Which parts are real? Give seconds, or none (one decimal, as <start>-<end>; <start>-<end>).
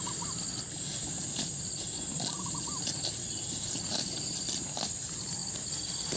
0.0-6.2